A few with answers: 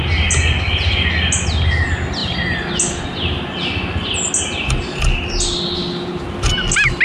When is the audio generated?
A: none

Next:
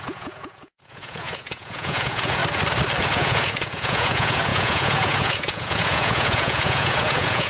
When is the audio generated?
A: 0.0-2.4 (vocoder, Vocos); 3.0-7.5